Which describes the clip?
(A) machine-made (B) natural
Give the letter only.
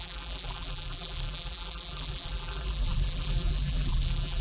A